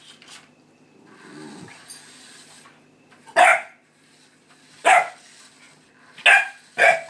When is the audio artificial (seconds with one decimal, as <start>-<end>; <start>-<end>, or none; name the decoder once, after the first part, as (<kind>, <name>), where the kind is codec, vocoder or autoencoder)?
none